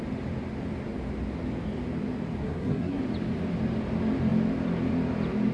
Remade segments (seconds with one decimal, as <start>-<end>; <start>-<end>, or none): 2.4-3.0